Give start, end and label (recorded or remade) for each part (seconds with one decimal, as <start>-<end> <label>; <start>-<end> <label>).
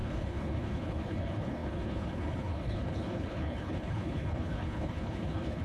0.0-5.6 remade